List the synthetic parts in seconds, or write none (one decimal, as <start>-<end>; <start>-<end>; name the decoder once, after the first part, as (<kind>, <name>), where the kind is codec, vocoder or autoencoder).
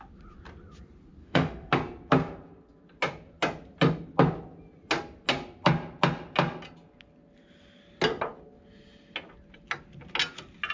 1.2-1.7 (autoencoder, DAC-VAE)